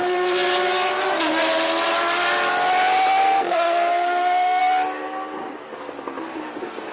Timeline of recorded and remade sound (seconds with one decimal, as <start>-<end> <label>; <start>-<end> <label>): 0.0-3.2 recorded; 3.2-4.6 remade; 4.6-6.9 recorded